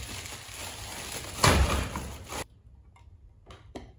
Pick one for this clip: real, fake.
real